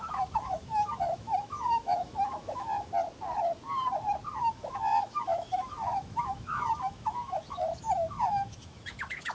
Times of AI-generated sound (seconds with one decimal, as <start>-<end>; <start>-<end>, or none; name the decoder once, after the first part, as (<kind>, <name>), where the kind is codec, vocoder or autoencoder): 0.0-2.9 (autoencoder, DAC-VAE); 4.4-9.3